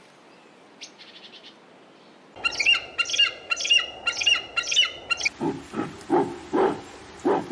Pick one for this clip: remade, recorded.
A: recorded